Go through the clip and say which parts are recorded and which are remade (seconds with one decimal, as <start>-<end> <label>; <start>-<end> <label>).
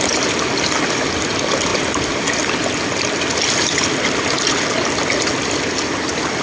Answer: 0.0-6.4 recorded